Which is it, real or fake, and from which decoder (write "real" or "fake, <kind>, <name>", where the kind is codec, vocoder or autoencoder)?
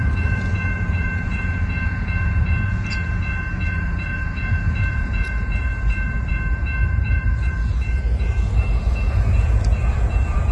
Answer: fake, vocoder, Vocos